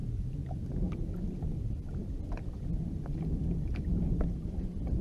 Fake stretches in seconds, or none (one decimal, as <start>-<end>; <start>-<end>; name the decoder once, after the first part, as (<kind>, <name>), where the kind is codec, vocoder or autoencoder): 0.0-0.9 (vocoder, BigVGAN v2)

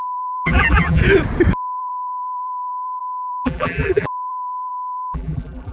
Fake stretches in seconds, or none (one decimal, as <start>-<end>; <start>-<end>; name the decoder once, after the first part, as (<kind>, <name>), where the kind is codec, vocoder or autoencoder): 0.0-1.0 (vocoder, BigVGAN v2); 1.8-5.7

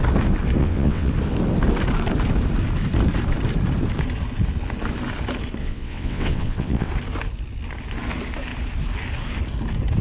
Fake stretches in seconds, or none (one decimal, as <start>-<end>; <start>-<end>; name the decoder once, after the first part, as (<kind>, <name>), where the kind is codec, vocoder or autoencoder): 0.6-1.1 (vocoder, WaveNeXt); 5.6-6.9

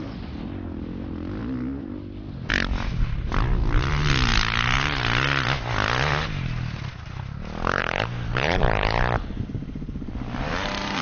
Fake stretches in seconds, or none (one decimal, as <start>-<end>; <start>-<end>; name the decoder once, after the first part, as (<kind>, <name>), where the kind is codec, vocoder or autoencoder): 7.8-11.0 (vocoder, BigVGAN v2)

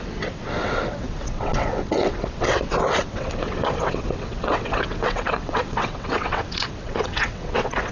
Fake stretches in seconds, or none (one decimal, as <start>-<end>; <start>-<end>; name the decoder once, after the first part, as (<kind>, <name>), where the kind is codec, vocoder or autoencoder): 0.0-7.9 (vocoder, WaveNeXt)